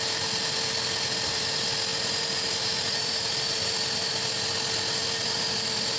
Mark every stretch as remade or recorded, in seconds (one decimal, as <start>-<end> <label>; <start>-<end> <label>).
0.0-6.0 recorded